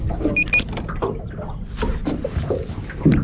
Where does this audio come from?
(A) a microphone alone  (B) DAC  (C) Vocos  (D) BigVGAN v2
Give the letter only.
A